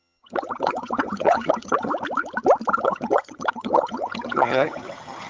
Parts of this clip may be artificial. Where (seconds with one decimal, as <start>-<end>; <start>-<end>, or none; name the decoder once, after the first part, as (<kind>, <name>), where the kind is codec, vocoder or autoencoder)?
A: 0.0-1.9 (vocoder, HiFi-GAN); 2.7-5.3